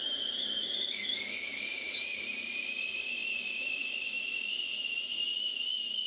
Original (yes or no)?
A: no